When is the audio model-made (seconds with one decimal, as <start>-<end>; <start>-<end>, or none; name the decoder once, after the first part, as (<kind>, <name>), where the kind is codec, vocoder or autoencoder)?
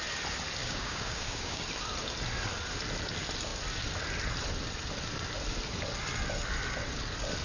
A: 0.6-1.6 (codec, DAC)